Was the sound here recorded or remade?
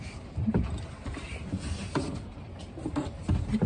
recorded